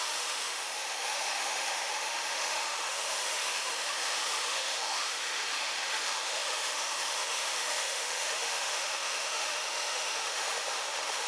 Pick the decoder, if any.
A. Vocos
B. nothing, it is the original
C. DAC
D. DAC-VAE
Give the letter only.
D